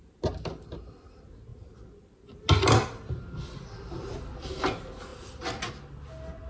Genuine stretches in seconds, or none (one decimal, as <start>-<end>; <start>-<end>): 0.0-6.5